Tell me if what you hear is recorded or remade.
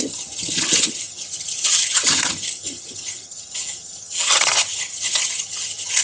remade